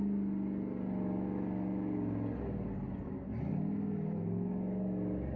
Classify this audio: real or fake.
real